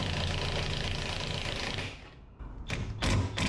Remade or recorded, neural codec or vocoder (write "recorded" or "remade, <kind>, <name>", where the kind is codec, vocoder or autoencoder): recorded